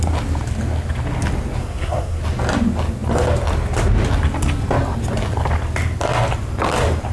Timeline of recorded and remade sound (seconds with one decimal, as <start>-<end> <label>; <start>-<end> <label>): 0.0-1.6 recorded; 1.6-2.2 remade; 2.2-7.1 recorded

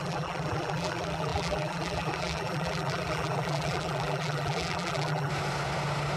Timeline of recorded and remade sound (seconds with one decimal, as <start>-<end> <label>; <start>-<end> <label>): 0.0-5.3 remade; 5.3-6.2 recorded

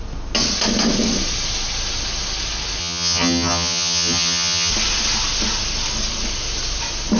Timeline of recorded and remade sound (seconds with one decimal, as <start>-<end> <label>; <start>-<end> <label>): 0.0-2.8 recorded; 2.8-4.7 remade; 4.7-7.2 recorded

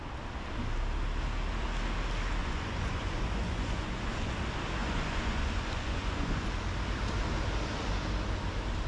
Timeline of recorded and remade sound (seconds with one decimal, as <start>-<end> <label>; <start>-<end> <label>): 0.0-2.4 recorded; 2.4-4.3 remade; 4.3-4.8 recorded; 4.8-6.5 remade; 6.5-8.9 recorded

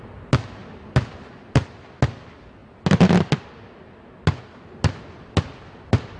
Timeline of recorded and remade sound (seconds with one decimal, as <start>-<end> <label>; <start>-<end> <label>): 0.0-6.2 recorded